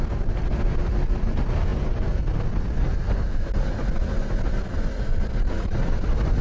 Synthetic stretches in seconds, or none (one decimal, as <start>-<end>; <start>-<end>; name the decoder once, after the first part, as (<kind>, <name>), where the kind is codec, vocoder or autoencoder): none